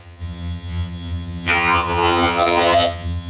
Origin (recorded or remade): remade